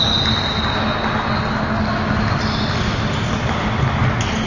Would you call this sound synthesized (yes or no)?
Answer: no